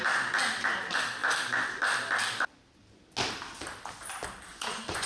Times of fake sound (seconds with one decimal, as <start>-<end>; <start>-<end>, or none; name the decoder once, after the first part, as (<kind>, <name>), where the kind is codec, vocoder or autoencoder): 4.5-5.1 (vocoder, Vocos)